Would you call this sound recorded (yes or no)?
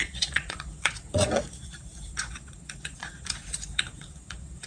no